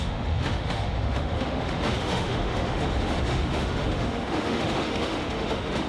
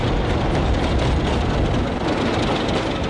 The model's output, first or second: first